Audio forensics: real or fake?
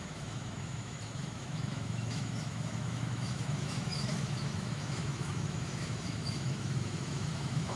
fake